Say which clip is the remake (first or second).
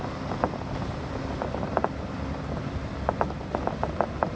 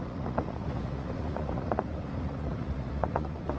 second